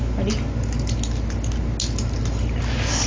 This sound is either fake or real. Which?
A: real